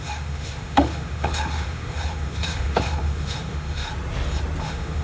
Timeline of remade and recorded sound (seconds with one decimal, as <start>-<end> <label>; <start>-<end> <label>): 0.0-3.9 remade; 3.9-4.6 recorded; 4.6-5.0 remade